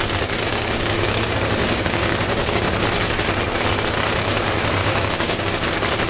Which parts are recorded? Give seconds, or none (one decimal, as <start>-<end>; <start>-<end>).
0.0-0.5; 2.7-4.8; 5.5-6.1